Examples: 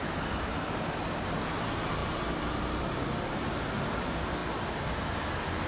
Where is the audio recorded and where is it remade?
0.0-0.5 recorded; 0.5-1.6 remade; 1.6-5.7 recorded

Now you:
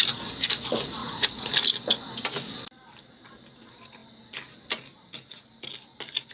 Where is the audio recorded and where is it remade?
0.0-1.0 recorded; 1.0-1.5 remade; 1.5-6.3 recorded

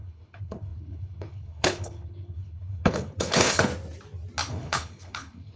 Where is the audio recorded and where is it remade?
0.0-3.7 remade; 3.7-4.5 recorded; 4.5-5.6 remade

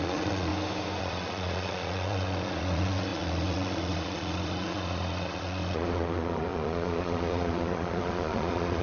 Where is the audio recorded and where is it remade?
0.0-0.5 remade; 0.5-1.0 recorded; 1.0-8.8 remade

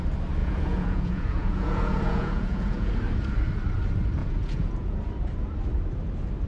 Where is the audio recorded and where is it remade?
0.0-0.4 recorded; 0.4-2.9 remade; 2.9-4.2 recorded; 4.2-5.0 remade; 5.0-6.5 recorded

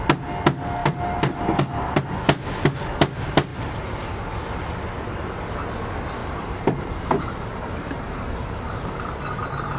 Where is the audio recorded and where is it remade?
0.0-0.8 recorded; 0.8-2.0 remade; 2.0-3.5 recorded; 3.5-4.2 remade; 4.2-6.2 recorded; 6.2-9.1 remade; 9.1-9.8 recorded

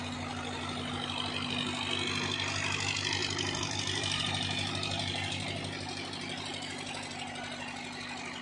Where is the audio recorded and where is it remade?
0.0-3.2 recorded; 3.2-4.2 remade; 4.2-8.4 recorded

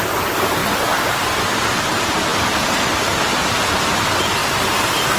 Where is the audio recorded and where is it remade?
0.0-5.2 recorded